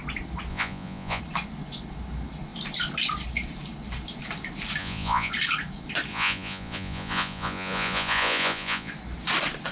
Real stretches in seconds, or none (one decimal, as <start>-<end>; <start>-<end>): 0.0-0.5; 1.2-4.8; 5.3-6.1; 8.9-9.7